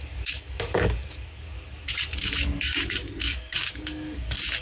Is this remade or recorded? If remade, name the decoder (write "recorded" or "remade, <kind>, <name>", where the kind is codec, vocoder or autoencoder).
remade, codec, DAC